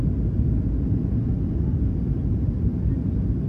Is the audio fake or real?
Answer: real